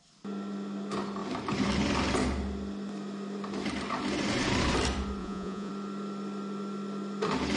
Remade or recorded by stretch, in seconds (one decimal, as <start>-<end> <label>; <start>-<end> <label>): 0.0-5.2 recorded; 5.2-5.7 remade; 5.7-7.6 recorded